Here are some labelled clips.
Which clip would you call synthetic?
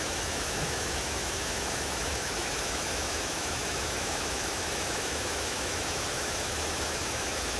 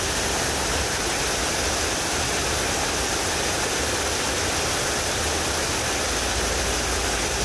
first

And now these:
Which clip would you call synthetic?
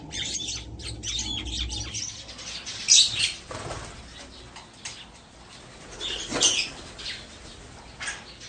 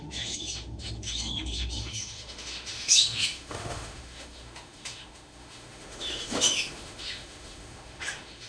second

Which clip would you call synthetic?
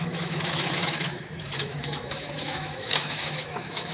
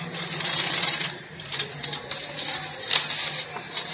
first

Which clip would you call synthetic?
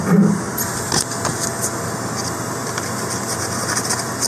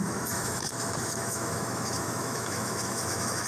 second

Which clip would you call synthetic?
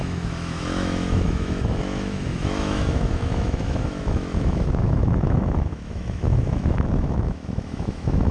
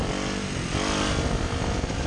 first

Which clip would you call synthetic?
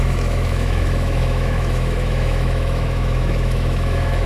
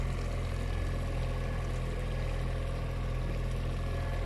first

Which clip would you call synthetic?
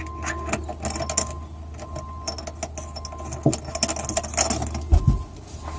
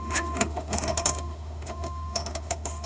second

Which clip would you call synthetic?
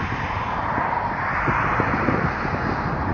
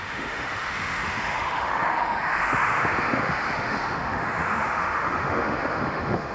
second